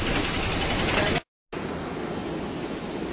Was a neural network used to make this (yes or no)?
no